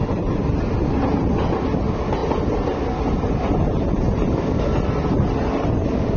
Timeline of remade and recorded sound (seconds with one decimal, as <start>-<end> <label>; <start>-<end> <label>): 0.0-6.2 recorded